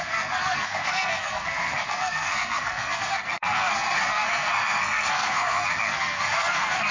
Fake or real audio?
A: fake